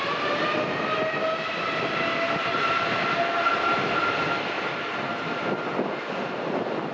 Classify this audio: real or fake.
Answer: real